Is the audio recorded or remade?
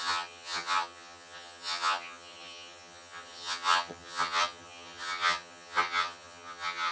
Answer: remade